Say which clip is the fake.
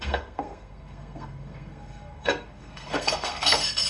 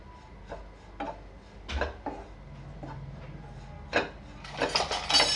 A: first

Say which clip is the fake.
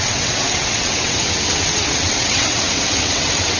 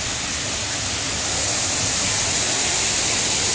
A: first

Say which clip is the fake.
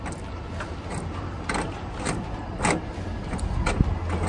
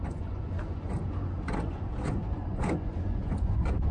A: second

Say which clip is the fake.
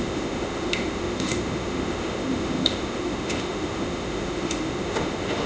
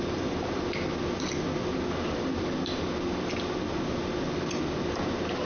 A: first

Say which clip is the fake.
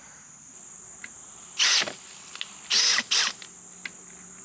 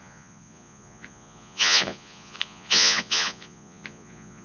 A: second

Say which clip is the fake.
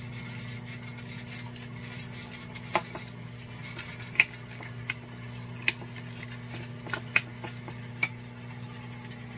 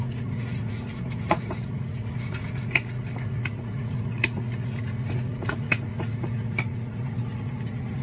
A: second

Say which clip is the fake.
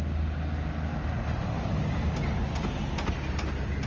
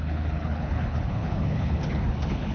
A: second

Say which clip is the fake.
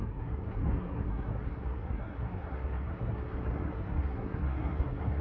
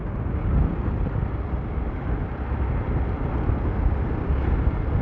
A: first